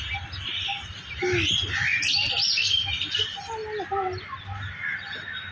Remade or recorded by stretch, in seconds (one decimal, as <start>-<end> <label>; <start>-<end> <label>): 0.0-5.5 recorded